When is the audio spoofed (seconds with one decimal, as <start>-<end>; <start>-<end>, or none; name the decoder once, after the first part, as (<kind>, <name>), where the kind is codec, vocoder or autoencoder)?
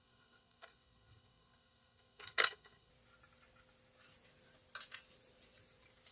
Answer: 0.0-2.9 (codec, SNAC)